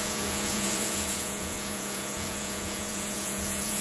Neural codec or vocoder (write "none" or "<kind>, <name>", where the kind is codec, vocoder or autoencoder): vocoder, Vocos